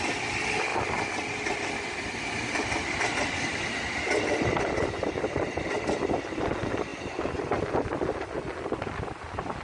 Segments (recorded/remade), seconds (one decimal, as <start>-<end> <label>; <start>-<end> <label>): 0.0-9.6 recorded